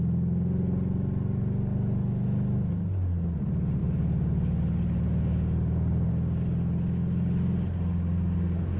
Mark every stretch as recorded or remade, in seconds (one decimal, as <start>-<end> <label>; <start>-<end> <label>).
0.0-8.8 recorded